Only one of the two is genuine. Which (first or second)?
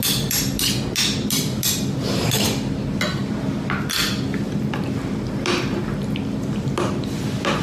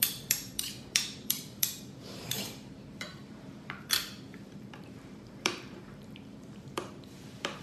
first